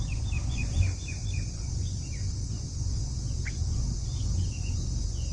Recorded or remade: remade